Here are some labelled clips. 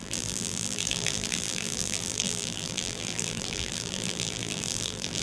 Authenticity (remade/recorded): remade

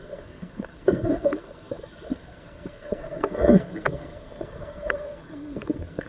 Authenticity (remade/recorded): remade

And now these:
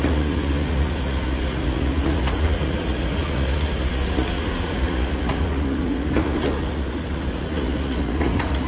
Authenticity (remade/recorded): remade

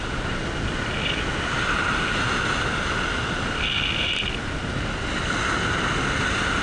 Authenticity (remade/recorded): recorded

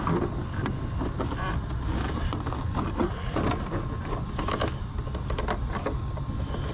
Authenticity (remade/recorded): recorded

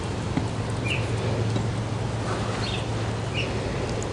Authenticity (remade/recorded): recorded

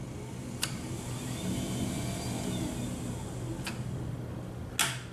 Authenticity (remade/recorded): recorded